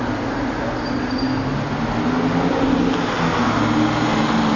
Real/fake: real